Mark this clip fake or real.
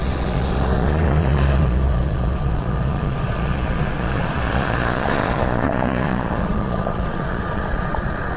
fake